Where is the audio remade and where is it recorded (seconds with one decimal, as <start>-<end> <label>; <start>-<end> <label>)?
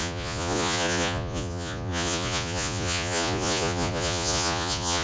0.0-5.0 remade